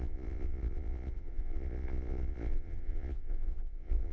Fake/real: fake